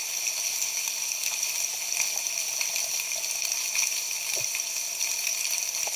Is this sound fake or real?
real